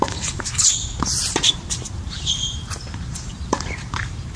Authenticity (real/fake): fake